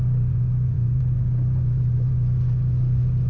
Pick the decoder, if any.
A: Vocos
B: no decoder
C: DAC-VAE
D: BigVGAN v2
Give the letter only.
A